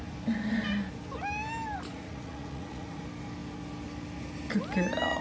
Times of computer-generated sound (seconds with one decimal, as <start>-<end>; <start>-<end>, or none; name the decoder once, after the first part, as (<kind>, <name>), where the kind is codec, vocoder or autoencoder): 1.9-3.0 (vocoder, Vocos)